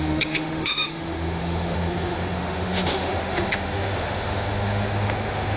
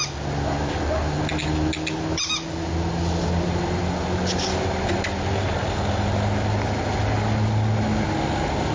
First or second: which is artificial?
first